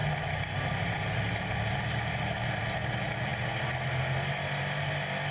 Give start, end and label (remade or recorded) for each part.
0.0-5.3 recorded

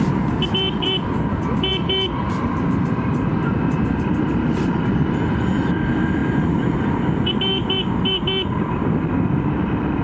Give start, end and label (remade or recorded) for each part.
0.0-10.0 recorded